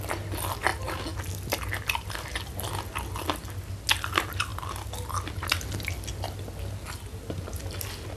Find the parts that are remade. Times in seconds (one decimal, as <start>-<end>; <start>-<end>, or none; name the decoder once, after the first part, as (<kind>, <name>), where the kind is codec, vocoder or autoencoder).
none